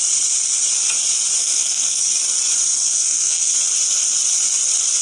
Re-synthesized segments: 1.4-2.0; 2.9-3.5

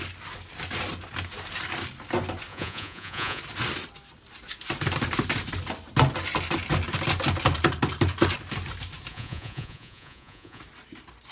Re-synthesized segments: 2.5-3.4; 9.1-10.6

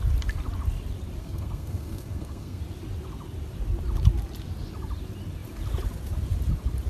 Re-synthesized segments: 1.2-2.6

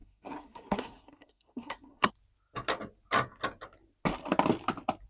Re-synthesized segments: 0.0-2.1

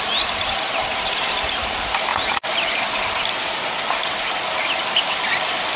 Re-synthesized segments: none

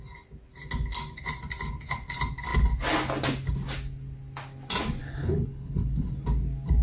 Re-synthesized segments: 5.0-6.1